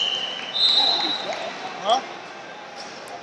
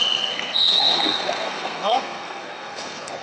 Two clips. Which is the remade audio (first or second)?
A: second